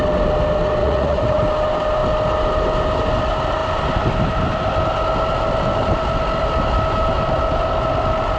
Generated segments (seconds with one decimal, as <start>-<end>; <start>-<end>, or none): 0.8-1.4